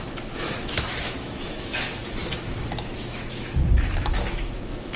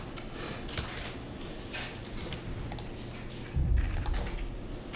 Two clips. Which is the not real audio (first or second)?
first